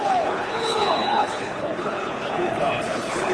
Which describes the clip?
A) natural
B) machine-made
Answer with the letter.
B